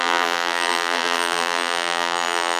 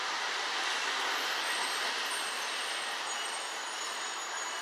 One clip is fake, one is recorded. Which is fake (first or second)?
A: first